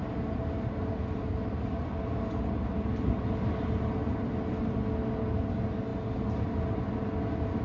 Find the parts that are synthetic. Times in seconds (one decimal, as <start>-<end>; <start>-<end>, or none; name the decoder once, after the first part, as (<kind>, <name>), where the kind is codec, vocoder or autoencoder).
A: none